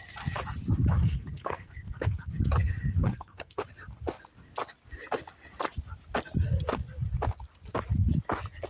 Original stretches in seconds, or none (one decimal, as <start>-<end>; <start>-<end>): 0.0-1.0; 2.3-3.0; 3.6-8.7